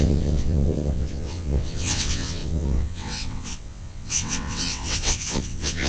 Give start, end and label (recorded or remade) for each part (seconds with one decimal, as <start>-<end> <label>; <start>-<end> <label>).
0.0-5.9 remade